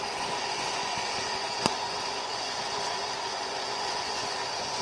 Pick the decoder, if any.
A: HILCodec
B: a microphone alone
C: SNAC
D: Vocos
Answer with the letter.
D